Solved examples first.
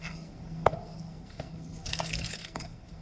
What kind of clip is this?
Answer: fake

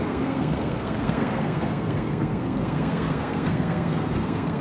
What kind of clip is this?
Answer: fake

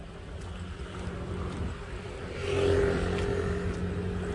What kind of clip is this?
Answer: real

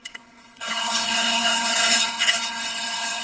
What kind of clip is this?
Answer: fake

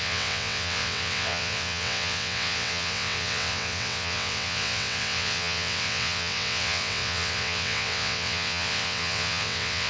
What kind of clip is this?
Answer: fake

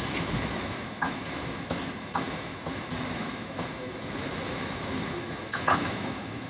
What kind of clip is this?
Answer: fake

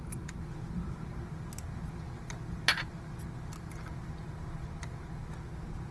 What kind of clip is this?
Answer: real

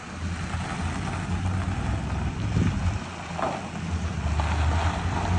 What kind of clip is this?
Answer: real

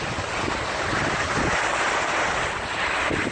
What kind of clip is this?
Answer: real